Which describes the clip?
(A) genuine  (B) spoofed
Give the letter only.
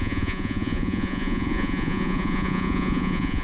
B